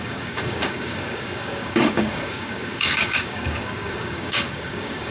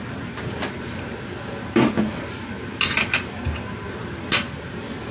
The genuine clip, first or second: second